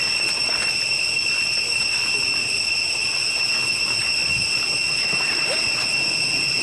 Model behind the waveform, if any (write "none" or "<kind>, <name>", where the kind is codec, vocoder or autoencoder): none